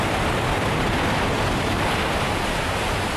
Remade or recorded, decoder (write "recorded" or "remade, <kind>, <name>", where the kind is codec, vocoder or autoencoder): recorded